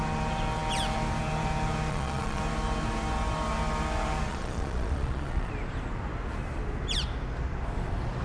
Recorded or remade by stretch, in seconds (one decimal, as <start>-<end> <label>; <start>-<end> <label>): 0.0-1.9 recorded; 1.9-2.4 remade; 2.4-4.3 recorded; 4.3-5.5 remade; 5.5-8.2 recorded

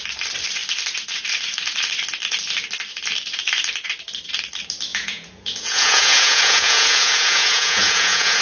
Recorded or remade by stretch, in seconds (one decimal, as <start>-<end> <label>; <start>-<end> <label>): 0.0-4.9 recorded; 4.9-8.4 remade

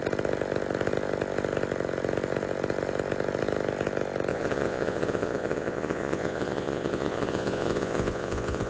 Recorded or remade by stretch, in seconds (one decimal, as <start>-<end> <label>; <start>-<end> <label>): 0.0-4.3 recorded; 4.3-8.7 remade

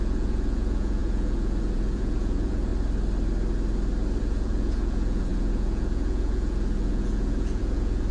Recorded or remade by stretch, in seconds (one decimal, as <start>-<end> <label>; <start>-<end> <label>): 0.0-2.7 remade; 2.7-4.2 recorded; 4.2-8.1 remade

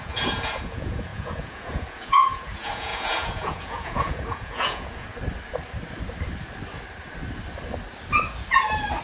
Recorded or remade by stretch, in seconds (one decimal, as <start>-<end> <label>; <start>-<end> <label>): 0.0-5.1 remade; 5.1-9.0 recorded

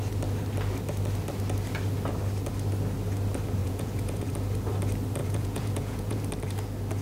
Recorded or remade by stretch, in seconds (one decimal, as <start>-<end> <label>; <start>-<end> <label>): 0.0-3.6 recorded; 3.6-4.3 remade; 4.3-5.2 recorded; 5.2-6.2 remade; 6.2-7.0 recorded